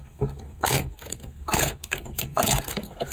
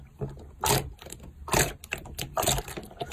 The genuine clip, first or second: second